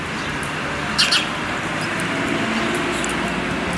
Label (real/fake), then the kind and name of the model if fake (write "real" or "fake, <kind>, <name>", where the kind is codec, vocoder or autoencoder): real